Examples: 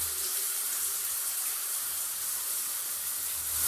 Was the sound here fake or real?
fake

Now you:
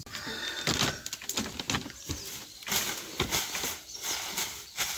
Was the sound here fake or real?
real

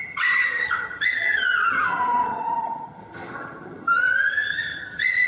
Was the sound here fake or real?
fake